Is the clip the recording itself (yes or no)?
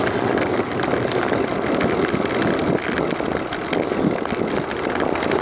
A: yes